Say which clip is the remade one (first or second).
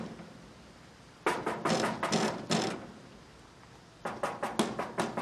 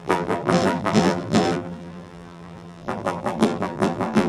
second